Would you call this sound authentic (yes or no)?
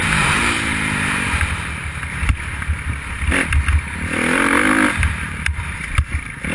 no